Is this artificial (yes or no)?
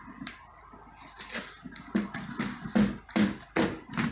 no